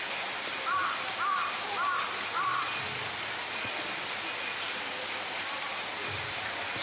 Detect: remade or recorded recorded